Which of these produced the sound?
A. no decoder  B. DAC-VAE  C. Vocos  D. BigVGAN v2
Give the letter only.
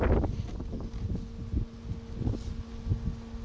A